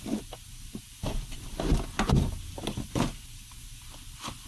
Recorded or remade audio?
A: recorded